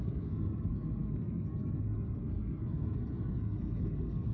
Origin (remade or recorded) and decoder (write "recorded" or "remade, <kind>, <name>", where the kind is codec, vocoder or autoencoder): remade, codec, SNAC